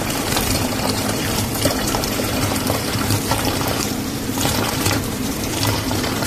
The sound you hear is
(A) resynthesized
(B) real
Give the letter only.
A